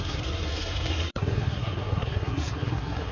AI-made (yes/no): yes